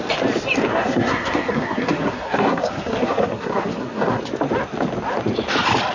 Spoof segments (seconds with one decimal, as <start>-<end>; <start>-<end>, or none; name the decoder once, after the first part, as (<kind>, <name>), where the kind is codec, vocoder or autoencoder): 0.7-4.2 (codec, SNAC)